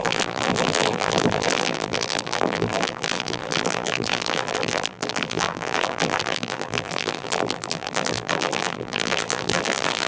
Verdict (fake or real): fake